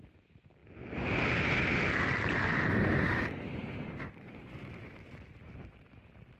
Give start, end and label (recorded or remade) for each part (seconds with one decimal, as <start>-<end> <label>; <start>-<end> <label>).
0.0-3.6 recorded; 3.6-5.1 remade; 5.1-6.4 recorded